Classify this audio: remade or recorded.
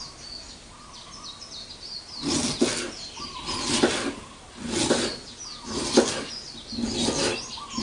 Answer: recorded